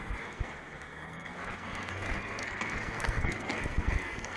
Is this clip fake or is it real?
fake